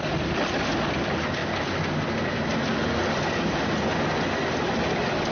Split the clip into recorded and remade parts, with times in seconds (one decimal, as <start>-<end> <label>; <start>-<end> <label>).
0.0-5.3 recorded